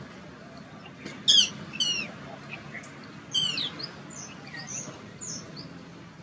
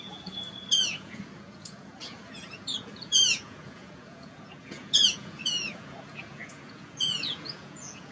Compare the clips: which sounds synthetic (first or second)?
second